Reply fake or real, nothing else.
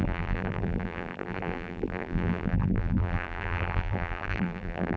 fake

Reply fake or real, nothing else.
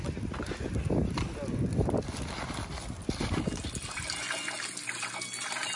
real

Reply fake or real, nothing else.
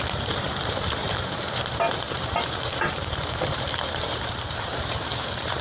fake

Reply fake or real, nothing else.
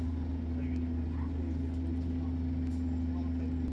real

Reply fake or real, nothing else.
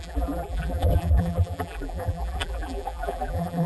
fake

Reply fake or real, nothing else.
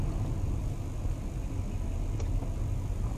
real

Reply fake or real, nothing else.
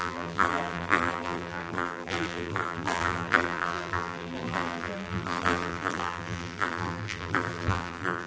fake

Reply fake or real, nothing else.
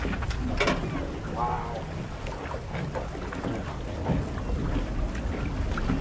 real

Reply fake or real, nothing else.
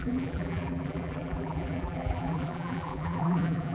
fake